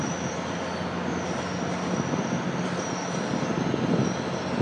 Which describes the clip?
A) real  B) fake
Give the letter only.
A